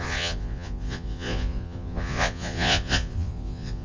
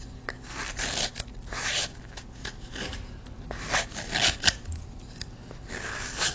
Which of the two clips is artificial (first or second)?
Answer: first